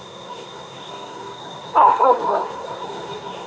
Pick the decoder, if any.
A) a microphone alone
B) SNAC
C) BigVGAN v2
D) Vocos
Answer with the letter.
B